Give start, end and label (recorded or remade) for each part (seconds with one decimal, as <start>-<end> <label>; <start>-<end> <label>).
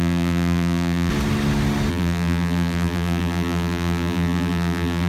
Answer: 0.0-1.1 remade; 1.1-1.9 recorded; 1.9-5.1 remade